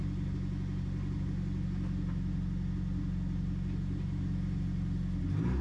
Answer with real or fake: real